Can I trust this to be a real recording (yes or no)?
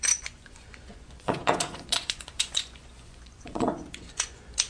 no